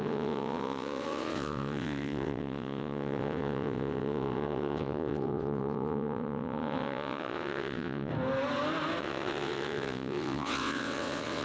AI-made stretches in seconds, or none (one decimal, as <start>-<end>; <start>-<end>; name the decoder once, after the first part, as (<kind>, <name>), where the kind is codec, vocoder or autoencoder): 0.0-8.1 (vocoder, WaveNeXt); 9.0-11.4